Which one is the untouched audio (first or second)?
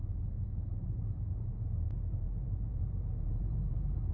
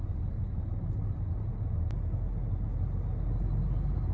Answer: second